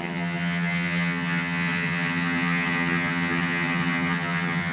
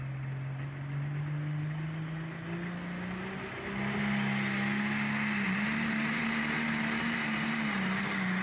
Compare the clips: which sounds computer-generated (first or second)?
first